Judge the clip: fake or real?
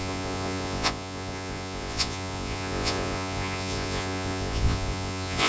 fake